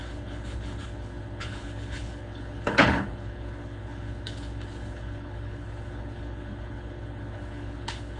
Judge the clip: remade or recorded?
remade